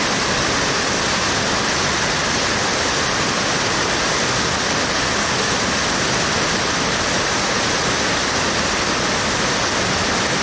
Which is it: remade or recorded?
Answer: recorded